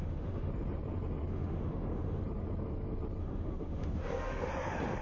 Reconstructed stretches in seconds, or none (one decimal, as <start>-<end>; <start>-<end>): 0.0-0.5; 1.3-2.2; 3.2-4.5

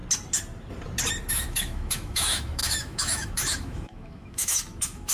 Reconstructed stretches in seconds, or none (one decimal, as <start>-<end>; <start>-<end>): 1.3-5.1

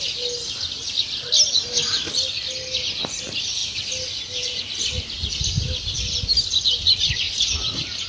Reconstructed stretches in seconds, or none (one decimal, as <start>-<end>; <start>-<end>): none

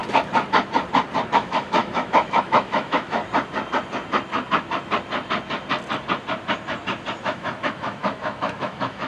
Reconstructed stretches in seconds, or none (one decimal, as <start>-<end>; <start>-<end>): 1.3-3.2; 7.2-9.1

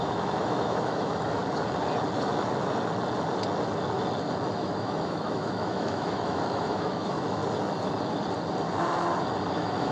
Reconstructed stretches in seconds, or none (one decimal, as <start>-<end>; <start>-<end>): 0.0-1.4; 4.6-7.4; 9.5-9.9

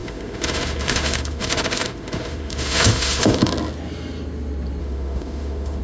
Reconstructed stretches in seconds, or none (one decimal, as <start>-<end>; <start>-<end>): 0.0-3.5; 4.8-5.8